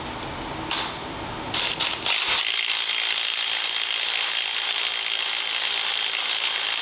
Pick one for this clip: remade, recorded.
recorded